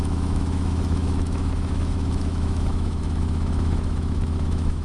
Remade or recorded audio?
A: remade